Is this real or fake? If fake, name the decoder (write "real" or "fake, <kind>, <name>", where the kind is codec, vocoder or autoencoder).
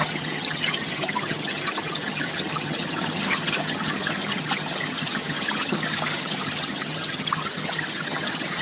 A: fake, vocoder, HiFi-GAN